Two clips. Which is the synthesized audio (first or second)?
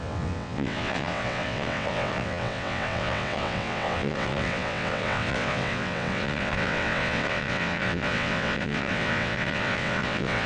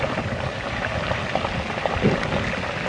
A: first